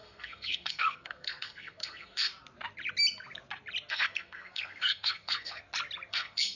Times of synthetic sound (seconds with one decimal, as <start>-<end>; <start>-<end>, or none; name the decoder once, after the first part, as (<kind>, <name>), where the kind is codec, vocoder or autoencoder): 0.0-2.3 (codec, SNAC); 3.9-5.6; 6.1-6.5